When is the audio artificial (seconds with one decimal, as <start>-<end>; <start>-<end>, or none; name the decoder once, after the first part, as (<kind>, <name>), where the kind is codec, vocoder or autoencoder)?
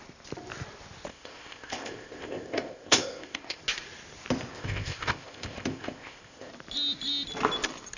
1.1-3.6 (codec, ZipCodec); 4.5-6.5